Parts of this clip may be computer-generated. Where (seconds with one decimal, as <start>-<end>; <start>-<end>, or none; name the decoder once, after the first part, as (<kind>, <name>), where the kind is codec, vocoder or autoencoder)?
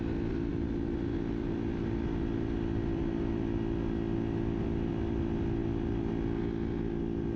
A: none